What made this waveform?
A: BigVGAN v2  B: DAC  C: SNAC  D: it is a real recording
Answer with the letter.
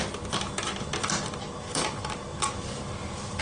D